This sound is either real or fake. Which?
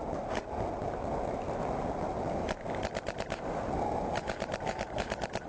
real